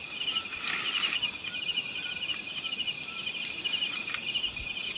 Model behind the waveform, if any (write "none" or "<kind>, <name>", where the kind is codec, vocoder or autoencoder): none